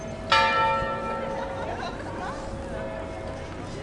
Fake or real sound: real